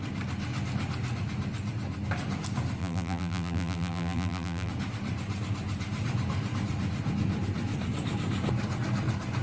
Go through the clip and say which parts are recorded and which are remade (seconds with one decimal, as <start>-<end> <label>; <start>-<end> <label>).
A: 0.0-2.8 recorded; 2.8-4.7 remade; 4.7-9.4 recorded